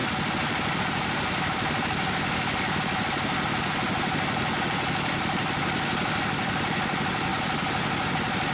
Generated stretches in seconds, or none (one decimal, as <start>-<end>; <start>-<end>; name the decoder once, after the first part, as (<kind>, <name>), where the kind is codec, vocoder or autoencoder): none

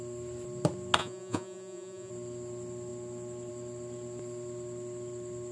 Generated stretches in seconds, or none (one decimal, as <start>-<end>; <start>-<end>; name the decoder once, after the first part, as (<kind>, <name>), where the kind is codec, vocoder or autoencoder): 1.0-2.1 (vocoder, Vocos)